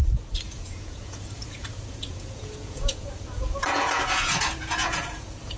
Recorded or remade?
remade